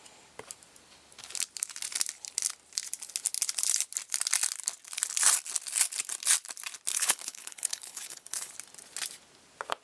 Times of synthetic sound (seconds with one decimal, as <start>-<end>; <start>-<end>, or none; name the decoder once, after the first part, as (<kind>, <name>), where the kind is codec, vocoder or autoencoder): 6.9-8.5 (codec, HILCodec)